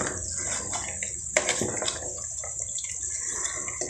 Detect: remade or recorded recorded